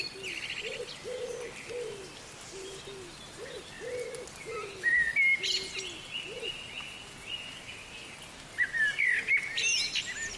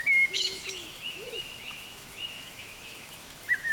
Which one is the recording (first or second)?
first